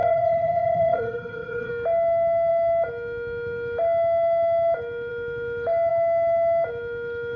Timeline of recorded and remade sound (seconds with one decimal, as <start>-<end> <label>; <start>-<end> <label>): 0.0-1.7 remade; 1.7-7.4 recorded

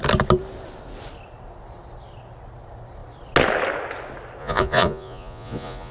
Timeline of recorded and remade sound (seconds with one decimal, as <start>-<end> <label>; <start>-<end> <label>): 0.0-4.4 recorded; 4.4-5.9 remade

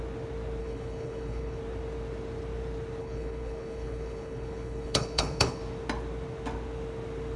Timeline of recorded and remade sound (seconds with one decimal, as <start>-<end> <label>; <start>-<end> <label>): 0.0-0.6 recorded; 0.6-1.6 remade; 1.6-3.0 recorded; 3.0-5.6 remade; 5.6-7.4 recorded

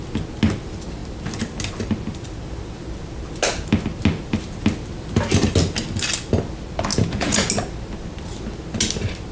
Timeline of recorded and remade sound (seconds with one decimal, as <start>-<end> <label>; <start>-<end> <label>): 0.0-6.9 recorded; 6.9-7.5 remade; 7.5-9.3 recorded

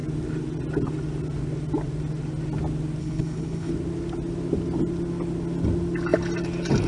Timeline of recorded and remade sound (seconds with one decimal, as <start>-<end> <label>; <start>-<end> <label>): 0.0-3.0 recorded; 3.0-3.7 remade; 3.7-6.9 recorded